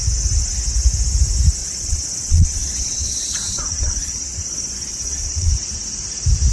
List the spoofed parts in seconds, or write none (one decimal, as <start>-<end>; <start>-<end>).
1.6-5.5